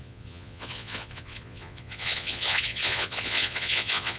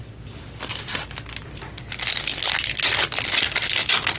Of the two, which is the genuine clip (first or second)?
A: second